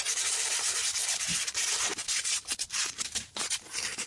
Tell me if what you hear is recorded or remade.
remade